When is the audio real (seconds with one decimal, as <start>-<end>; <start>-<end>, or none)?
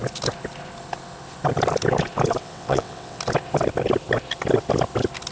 0.0-2.4; 3.2-5.3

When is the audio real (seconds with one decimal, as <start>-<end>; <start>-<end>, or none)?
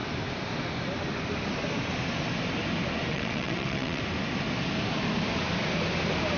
0.0-3.1; 4.0-6.4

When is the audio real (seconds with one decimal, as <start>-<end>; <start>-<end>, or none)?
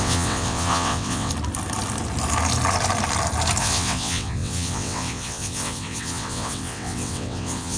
1.3-3.6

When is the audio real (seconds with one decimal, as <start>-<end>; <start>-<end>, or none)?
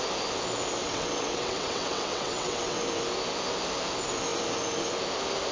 0.0-0.8; 2.8-5.5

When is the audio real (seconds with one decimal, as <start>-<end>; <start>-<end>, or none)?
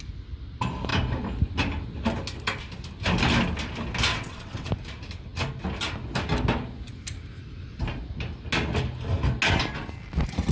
0.0-4.1; 4.7-10.5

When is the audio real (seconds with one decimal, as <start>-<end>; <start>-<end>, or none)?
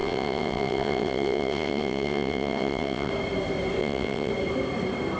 3.1-3.8; 4.3-5.2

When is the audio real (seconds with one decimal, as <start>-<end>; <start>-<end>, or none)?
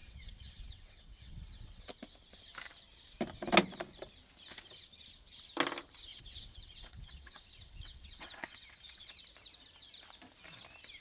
1.8-6.1; 9.2-11.0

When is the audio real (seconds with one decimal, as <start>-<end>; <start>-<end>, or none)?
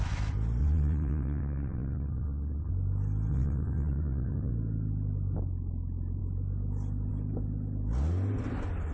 0.0-0.6; 2.7-3.3; 4.5-8.9